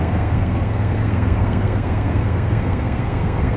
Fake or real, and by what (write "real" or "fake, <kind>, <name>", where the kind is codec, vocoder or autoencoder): fake, codec, SNAC